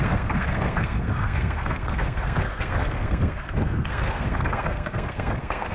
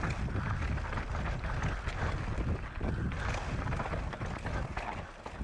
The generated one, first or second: first